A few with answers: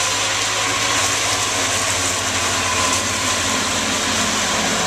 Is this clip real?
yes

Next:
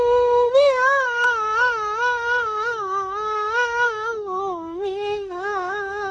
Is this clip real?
no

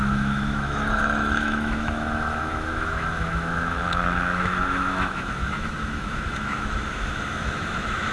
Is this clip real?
no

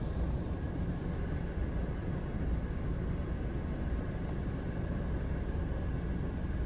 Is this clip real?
yes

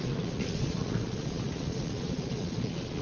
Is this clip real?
no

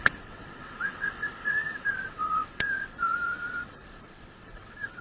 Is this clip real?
no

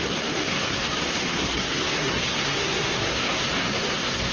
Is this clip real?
no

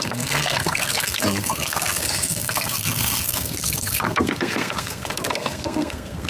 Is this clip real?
no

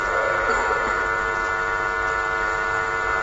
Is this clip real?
yes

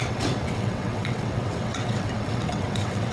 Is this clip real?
no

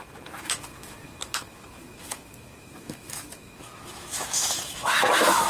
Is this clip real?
no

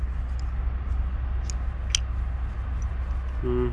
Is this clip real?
yes